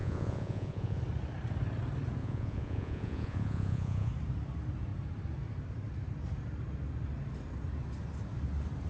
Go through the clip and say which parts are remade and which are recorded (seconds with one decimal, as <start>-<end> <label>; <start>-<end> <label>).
0.0-1.0 remade; 1.0-2.2 recorded; 2.2-4.1 remade; 4.1-8.9 recorded